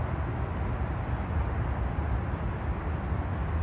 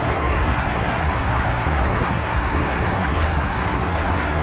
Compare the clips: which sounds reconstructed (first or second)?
second